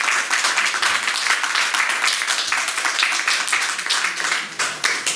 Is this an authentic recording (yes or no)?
yes